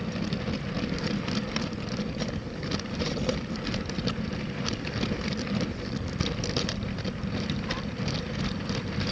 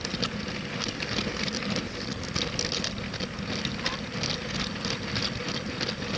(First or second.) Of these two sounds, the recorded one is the second